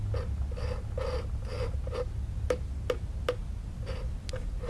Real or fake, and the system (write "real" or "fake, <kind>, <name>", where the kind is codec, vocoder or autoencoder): real